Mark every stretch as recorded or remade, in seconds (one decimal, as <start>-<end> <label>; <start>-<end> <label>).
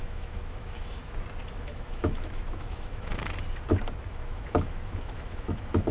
0.0-1.0 remade; 1.0-1.6 recorded; 1.6-3.1 remade; 3.1-4.1 recorded; 4.1-5.9 remade